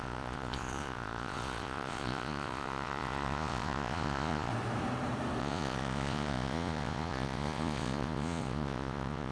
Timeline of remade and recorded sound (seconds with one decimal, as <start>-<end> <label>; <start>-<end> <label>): 0.0-4.5 remade; 4.5-5.4 recorded; 5.4-9.3 remade